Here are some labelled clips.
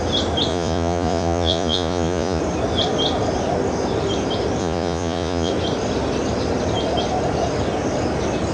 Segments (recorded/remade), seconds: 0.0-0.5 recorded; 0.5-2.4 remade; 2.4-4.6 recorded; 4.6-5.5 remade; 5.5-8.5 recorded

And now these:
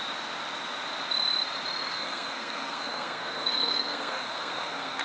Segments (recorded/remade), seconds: 0.0-1.9 recorded; 1.9-5.0 remade

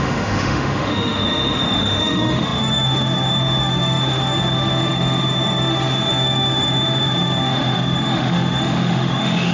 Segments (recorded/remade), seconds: 0.0-9.5 remade

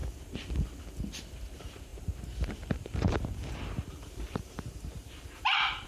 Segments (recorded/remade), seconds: 0.0-1.2 recorded; 1.2-5.9 remade

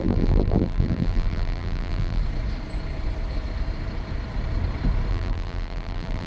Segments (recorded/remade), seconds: 0.0-2.2 remade; 2.2-5.1 recorded; 5.1-6.3 remade

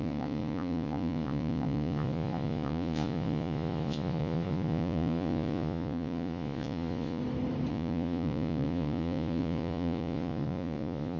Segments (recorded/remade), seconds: 0.0-7.2 remade; 7.2-7.7 recorded; 7.7-11.2 remade